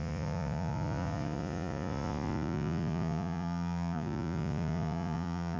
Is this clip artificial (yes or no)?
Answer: yes